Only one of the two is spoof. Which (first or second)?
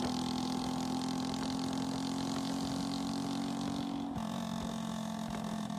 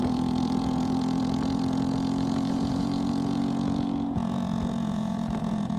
second